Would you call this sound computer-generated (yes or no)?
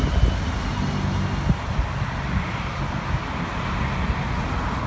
no